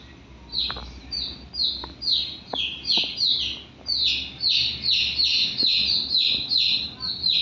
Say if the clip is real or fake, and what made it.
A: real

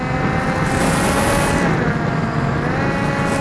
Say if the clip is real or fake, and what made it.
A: real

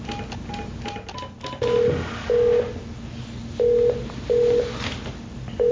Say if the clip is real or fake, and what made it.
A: real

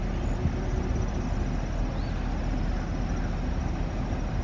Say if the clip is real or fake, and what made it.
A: real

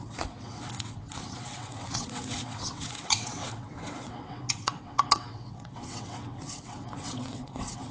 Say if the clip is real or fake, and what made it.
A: fake, vocoder, WaveNeXt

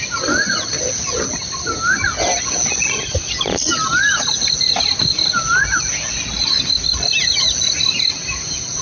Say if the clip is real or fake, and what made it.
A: real